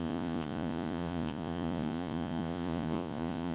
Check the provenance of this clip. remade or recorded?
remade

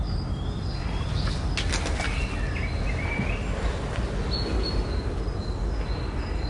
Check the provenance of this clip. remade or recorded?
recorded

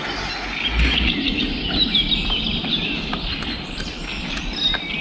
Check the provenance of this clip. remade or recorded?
recorded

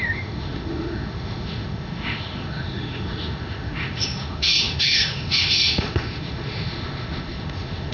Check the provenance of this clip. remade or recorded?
remade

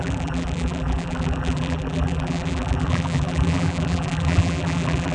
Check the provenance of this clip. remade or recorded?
remade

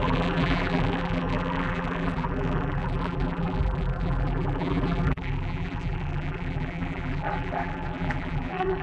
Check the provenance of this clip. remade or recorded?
remade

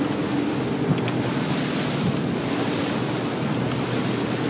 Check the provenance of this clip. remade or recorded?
recorded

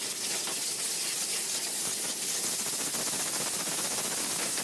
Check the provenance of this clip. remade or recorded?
recorded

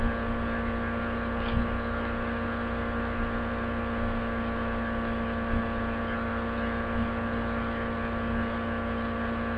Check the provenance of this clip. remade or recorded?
recorded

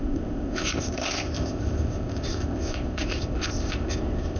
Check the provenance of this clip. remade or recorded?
remade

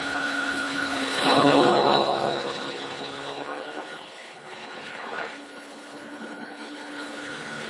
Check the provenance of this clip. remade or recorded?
remade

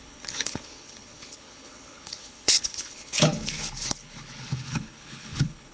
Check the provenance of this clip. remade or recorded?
remade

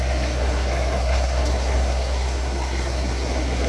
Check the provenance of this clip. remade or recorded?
remade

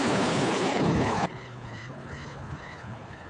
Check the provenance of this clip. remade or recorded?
remade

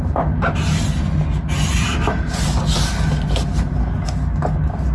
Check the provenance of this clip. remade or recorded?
recorded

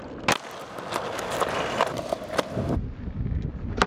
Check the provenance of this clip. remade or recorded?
recorded